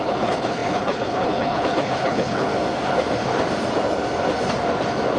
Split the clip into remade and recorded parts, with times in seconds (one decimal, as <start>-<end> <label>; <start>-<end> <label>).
0.0-2.5 remade; 2.5-5.2 recorded